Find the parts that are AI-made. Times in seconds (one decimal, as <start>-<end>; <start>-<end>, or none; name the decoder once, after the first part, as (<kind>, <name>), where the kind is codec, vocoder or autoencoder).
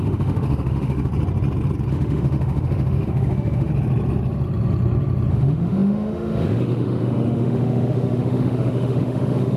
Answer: 0.0-1.1 (autoencoder, DAC-VAE); 1.9-3.7; 5.3-9.6